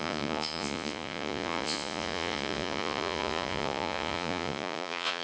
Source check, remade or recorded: remade